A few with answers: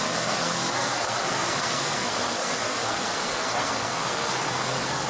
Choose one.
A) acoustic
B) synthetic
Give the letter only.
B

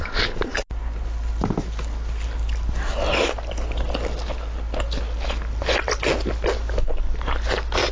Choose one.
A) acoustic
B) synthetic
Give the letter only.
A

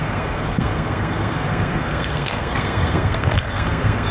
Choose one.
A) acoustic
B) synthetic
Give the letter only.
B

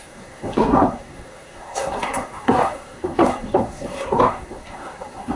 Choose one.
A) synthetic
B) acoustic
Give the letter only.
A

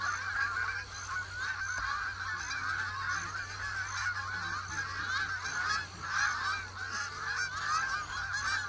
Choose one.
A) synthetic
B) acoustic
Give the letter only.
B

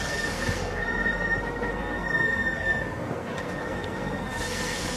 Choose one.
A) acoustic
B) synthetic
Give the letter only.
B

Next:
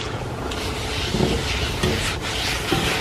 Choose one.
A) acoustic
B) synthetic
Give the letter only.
A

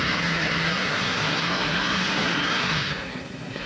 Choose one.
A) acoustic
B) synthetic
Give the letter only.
B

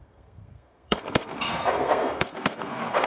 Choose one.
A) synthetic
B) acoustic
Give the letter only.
A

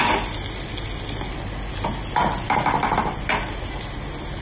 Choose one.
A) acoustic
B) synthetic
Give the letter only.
A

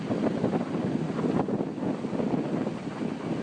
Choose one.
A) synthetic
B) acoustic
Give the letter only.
B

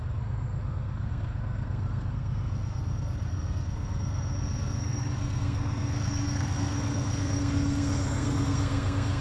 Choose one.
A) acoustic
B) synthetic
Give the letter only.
B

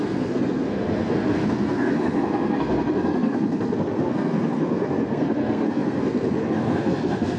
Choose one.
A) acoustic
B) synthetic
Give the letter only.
B